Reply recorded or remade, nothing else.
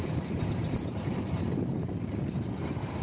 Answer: remade